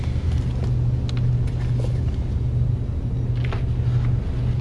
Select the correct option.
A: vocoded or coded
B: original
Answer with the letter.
B